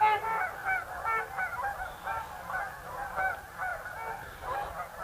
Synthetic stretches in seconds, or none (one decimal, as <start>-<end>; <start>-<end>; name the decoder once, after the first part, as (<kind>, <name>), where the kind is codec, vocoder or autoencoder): none